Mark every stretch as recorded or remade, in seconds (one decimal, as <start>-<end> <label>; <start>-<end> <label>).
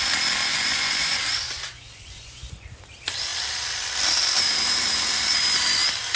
0.0-0.5 recorded; 0.5-2.9 remade; 2.9-6.2 recorded